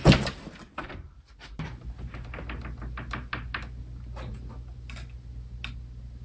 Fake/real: real